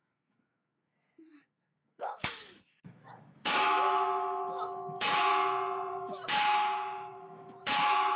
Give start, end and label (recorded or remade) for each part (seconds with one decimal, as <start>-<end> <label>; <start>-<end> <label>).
0.0-5.3 remade; 5.3-5.9 recorded; 5.9-8.2 remade